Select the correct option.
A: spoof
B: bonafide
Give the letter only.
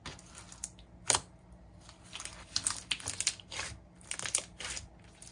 B